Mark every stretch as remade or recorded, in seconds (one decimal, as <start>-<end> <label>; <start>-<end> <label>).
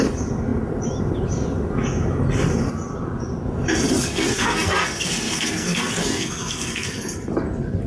0.0-4.1 recorded; 4.1-7.0 remade; 7.0-7.9 recorded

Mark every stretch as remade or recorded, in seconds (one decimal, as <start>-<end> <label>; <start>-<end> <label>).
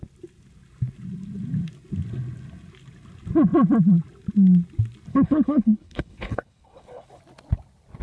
0.0-5.1 recorded; 5.1-7.2 remade; 7.2-8.0 recorded